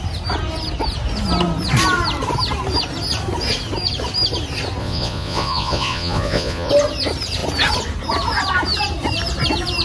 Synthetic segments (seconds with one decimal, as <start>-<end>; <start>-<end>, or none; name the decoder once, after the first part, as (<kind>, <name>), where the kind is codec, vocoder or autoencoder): 4.8-6.7 (vocoder, Vocos)